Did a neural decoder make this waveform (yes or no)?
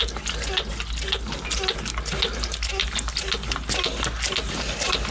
no